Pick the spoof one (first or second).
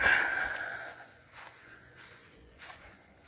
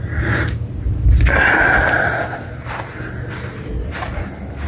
first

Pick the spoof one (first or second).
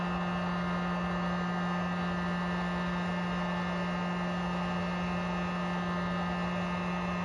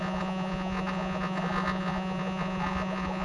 second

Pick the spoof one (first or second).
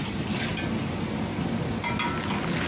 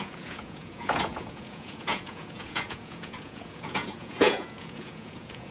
second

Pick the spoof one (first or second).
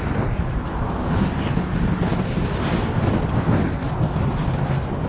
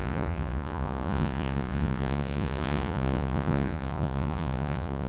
second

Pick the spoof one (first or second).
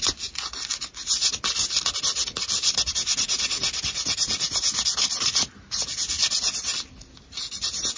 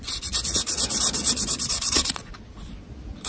second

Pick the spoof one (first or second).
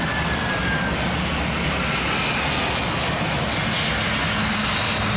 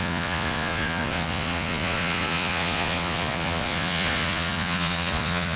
second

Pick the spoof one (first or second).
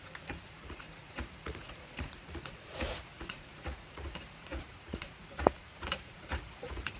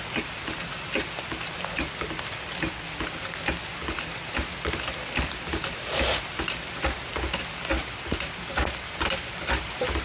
first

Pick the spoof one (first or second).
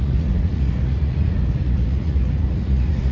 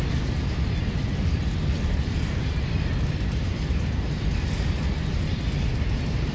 first